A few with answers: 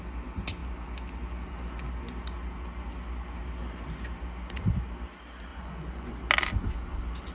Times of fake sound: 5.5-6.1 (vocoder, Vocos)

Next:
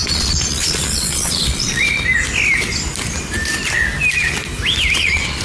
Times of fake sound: 0.0-1.8 (vocoder, Vocos); 5.0-5.4

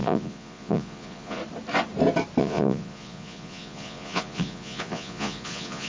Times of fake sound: 0.0-1.4 (vocoder, Vocos); 2.4-5.9

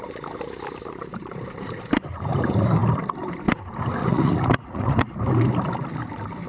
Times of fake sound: 4.0-5.2 (vocoder, Vocos)

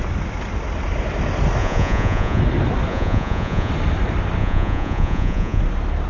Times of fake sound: 1.6-2.4 (vocoder, Vocos); 2.9-3.7; 4.4-5.6

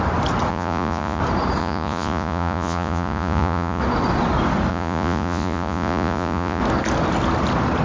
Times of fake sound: 0.5-1.2 (vocoder, Vocos); 1.6-3.8; 4.7-6.6

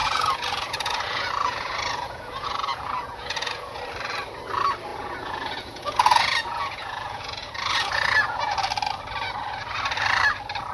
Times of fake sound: 0.0-3.8 (vocoder, Vocos); 4.9-8.6

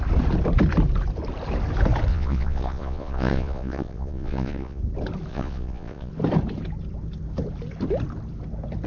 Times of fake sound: 2.1-4.8 (vocoder, Vocos); 5.3-6.1